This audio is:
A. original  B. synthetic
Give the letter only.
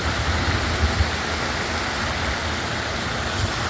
A